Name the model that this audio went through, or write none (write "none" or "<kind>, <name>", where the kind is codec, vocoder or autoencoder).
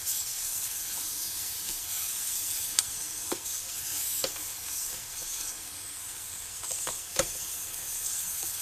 codec, SNAC